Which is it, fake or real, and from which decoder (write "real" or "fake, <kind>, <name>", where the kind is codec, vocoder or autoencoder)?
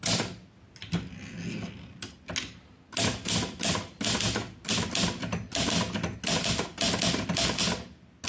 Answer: real